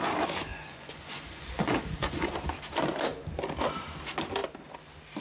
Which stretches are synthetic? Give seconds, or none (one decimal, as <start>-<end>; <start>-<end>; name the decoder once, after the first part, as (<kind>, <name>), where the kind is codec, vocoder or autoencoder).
0.5-2.3 (vocoder, Vocos)